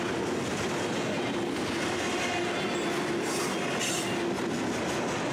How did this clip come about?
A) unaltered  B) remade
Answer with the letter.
A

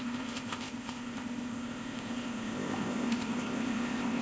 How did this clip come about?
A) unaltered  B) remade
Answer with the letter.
B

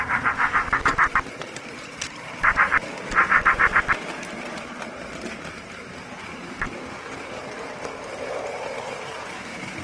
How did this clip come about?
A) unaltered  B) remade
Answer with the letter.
B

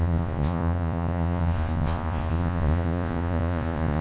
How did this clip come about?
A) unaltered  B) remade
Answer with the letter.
B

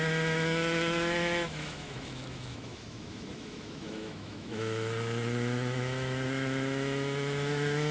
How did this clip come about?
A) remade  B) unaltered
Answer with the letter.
A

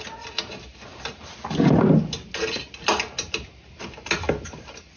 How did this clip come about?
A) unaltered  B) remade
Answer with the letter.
A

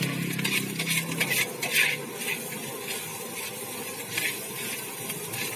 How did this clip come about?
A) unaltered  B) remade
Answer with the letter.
A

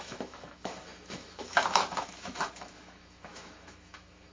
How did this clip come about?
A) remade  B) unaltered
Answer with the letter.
A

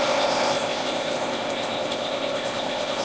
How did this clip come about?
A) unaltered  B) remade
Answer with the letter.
B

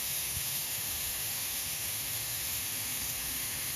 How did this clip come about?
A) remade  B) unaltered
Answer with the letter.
A